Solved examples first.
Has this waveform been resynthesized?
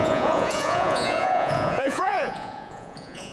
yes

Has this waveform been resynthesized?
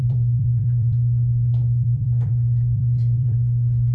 yes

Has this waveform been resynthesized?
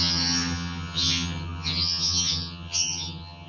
yes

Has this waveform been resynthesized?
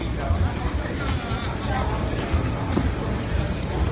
no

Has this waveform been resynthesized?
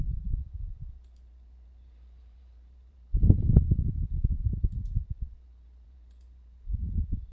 yes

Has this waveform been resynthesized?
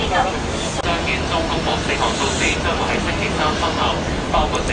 no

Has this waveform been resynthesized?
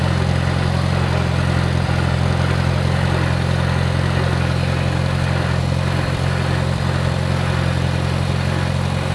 no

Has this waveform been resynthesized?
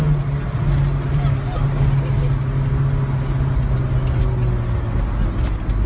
no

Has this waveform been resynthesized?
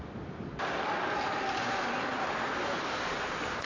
no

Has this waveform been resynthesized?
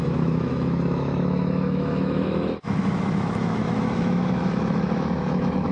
yes